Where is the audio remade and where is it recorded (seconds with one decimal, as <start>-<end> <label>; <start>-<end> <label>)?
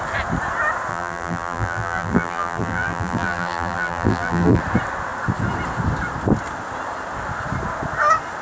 0.0-0.9 recorded; 0.9-4.6 remade; 4.6-8.4 recorded